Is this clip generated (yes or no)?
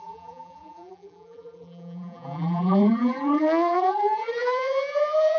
yes